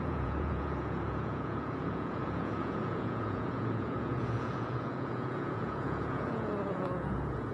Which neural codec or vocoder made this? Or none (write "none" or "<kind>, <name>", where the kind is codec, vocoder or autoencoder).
vocoder, Vocos